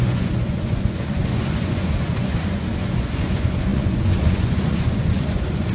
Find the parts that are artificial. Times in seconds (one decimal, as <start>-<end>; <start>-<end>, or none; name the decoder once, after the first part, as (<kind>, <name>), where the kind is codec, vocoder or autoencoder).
0.0-5.7 (vocoder, Vocos)